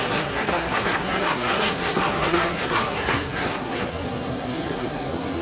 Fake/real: fake